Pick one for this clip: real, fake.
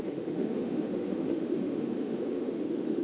fake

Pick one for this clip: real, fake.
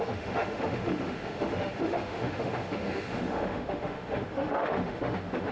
fake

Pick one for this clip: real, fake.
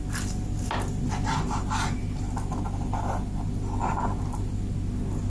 real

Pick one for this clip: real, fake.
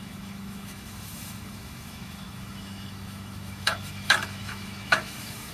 fake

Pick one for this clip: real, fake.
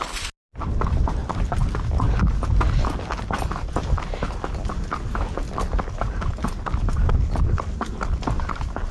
real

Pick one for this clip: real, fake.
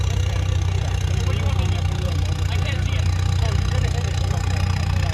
real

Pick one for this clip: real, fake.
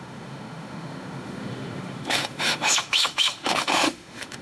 fake